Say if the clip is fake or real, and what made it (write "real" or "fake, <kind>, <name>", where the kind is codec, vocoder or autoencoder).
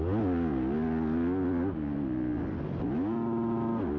real